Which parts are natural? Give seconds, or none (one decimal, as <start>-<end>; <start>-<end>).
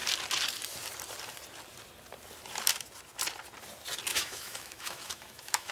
0.0-4.1